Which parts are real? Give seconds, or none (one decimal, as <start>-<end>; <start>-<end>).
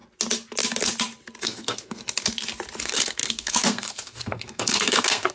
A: 0.0-1.4; 2.0-2.8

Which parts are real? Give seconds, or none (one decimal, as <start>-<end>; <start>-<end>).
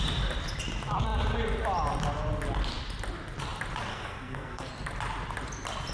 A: 0.0-3.9; 4.7-5.9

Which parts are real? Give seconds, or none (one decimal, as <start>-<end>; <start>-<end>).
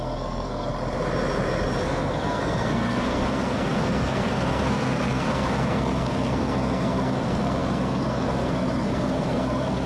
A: 0.7-1.8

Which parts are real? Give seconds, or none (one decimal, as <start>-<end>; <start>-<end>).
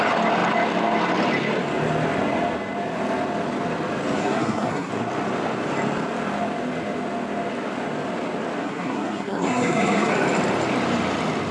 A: 0.0-4.2; 4.9-8.6; 10.1-11.5